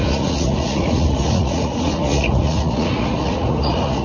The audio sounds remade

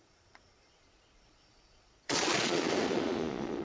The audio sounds remade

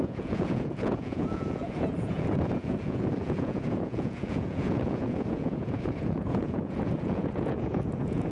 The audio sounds remade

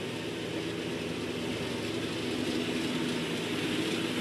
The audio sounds recorded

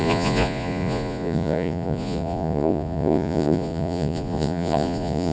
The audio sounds remade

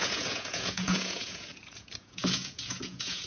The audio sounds remade